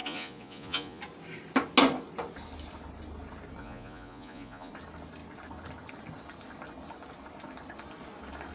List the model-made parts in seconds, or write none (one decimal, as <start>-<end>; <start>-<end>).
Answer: 0.0-1.0; 3.6-4.7

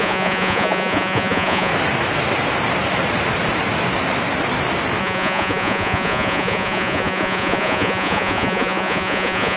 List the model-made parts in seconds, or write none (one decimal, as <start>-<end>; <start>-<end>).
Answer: 0.0-1.7; 5.0-9.6

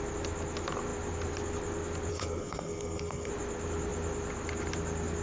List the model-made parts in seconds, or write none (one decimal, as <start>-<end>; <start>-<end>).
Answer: 2.1-3.3

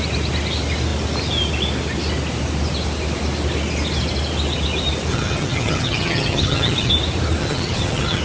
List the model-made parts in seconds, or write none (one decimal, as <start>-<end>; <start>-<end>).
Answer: 5.1-6.9; 7.4-8.2

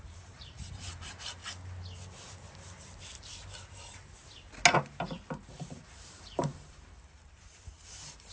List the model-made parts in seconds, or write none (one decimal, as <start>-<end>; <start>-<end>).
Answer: 0.0-1.4; 5.5-8.3

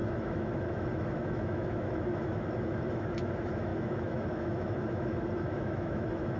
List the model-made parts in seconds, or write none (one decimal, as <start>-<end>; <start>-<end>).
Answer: 0.0-6.4